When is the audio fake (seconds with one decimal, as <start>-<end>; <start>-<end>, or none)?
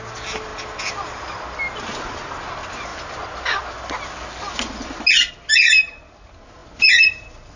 none